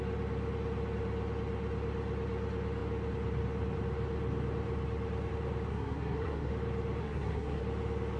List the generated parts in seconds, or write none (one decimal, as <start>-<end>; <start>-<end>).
5.7-6.5; 7.0-7.6